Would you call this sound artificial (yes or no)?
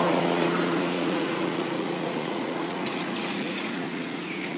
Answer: yes